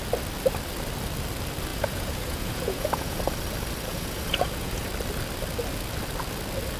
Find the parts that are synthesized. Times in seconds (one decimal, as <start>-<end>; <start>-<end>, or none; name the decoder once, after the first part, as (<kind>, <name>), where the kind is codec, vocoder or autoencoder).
1.7-3.2 (vocoder, Vocos); 3.9-4.9